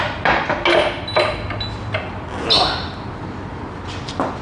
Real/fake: real